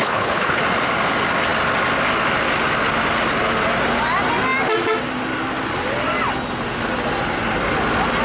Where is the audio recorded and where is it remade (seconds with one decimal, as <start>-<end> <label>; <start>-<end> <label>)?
0.0-0.6 remade; 0.6-8.2 recorded